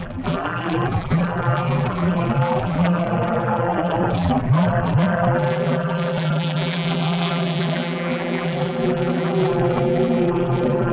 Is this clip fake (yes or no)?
yes